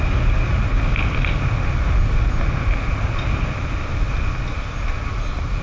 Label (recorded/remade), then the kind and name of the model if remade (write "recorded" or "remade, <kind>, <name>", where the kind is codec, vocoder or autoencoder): recorded